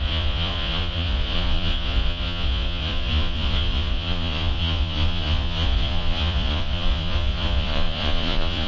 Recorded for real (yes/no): no